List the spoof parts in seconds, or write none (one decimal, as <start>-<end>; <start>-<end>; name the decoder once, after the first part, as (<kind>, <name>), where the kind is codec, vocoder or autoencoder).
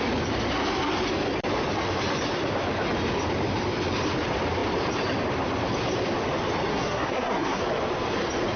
6.7-7.6 (codec, SNAC)